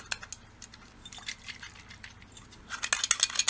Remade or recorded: recorded